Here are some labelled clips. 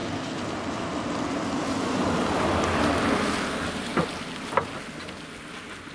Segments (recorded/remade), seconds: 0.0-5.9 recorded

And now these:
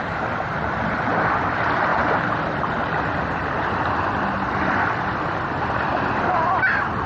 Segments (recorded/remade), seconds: 0.0-5.9 remade; 5.9-7.1 recorded